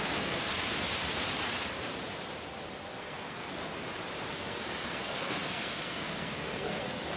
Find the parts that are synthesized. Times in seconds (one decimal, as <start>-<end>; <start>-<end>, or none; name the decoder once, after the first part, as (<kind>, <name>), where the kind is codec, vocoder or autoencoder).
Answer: 0.0-0.7 (codec, SNAC); 3.0-3.6; 4.3-7.2